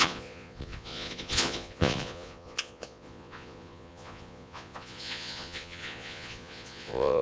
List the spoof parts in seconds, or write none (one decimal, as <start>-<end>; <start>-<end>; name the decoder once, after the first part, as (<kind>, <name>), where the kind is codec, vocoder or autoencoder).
0.0-7.2 (vocoder, Vocos)